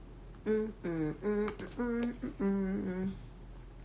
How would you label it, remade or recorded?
recorded